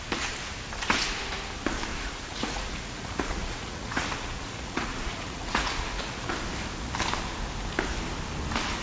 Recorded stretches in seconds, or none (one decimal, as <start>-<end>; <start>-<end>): 0.0-1.9; 6.3-8.8

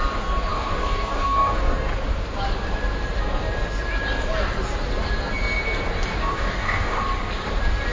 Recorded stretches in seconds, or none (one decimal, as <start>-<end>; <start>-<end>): 0.0-0.5; 1.9-6.2; 7.0-7.9